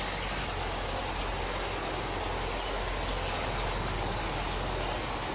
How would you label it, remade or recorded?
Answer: recorded